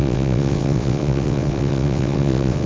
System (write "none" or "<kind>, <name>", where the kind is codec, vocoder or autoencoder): vocoder, WaveNeXt